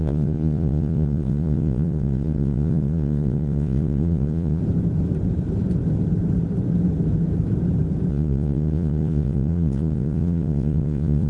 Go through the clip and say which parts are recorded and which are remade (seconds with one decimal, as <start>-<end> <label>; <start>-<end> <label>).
0.0-4.6 remade; 4.6-8.1 recorded; 8.1-11.3 remade